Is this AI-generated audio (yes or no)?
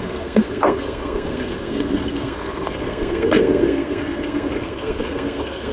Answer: yes